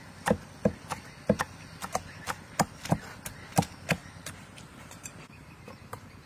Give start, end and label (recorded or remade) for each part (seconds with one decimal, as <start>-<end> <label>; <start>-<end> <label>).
0.0-4.0 recorded; 4.0-6.3 remade